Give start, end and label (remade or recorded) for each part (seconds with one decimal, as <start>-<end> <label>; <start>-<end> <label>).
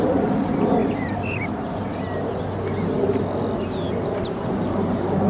0.0-0.8 recorded; 0.8-1.8 remade; 1.8-5.3 recorded